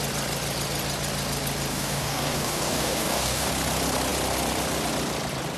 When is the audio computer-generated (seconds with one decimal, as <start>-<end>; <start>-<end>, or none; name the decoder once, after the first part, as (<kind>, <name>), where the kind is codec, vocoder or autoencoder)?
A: 1.7-3.5 (codec, DAC)